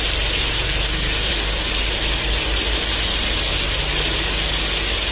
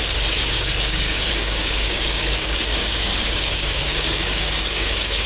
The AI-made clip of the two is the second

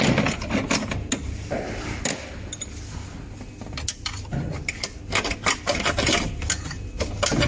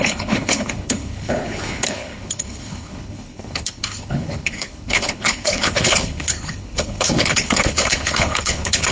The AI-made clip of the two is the second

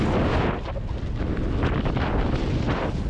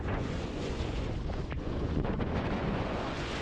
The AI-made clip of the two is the second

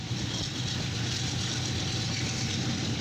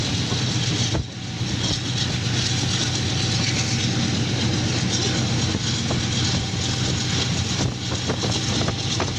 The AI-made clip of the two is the first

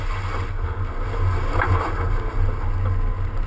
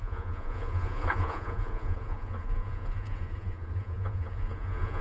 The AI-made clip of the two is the second